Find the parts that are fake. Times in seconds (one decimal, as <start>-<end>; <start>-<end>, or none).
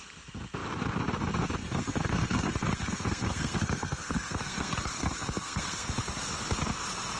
1.6-5.9